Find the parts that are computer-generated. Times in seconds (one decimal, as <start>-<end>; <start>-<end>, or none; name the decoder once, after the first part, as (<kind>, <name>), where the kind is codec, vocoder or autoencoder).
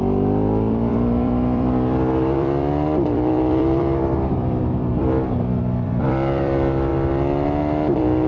0.0-6.9 (vocoder, BigVGAN v2)